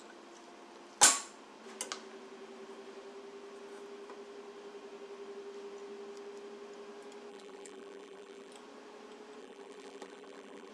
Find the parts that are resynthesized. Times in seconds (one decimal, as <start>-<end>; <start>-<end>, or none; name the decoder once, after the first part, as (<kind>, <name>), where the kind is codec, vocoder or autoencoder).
7.3-8.5 (vocoder, BigVGAN v2); 9.4-10.7